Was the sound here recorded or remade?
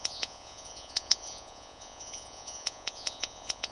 remade